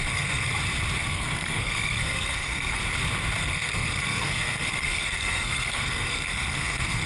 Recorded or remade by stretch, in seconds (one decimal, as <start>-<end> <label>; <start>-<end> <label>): 0.0-0.5 remade; 0.5-1.0 recorded; 1.0-2.8 remade; 2.8-3.4 recorded; 3.4-7.1 remade